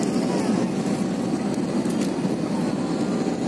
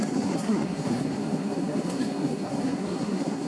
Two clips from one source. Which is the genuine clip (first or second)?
first